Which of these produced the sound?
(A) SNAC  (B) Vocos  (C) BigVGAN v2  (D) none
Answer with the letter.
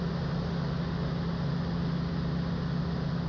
D